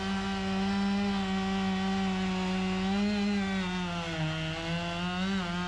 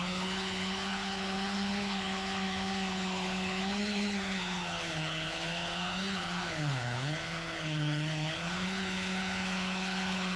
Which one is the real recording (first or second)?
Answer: first